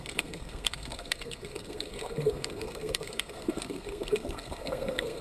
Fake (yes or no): yes